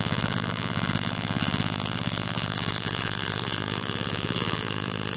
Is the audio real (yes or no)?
no